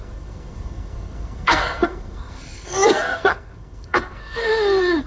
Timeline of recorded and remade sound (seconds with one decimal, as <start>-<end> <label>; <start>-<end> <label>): 0.0-5.1 remade